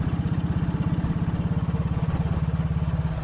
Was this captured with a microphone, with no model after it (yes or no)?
yes